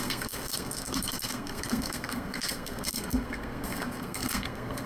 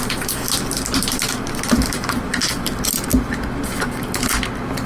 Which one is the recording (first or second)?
second